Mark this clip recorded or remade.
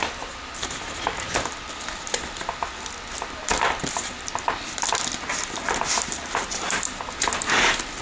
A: remade